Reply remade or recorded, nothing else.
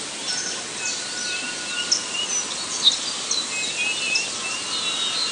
recorded